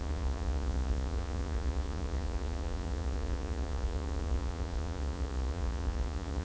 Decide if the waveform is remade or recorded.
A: remade